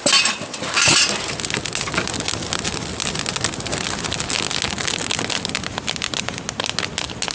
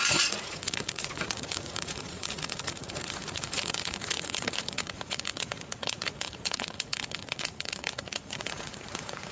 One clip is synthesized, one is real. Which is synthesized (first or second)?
second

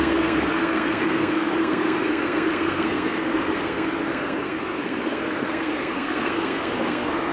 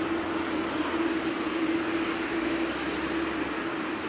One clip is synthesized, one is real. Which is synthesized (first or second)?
first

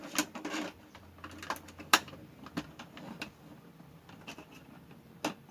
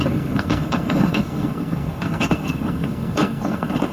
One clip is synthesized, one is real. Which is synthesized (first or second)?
second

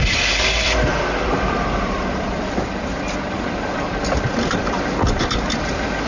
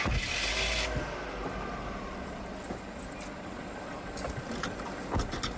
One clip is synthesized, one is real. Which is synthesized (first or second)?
first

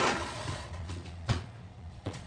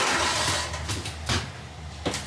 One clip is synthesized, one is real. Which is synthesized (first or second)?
first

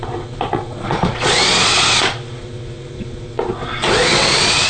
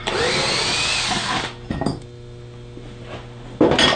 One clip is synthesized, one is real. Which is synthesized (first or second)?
first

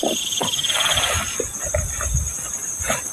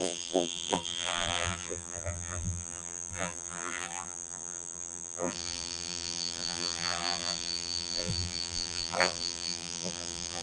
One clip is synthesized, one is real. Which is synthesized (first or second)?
second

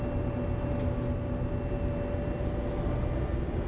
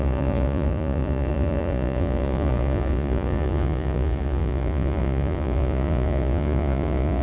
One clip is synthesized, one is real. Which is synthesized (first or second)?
second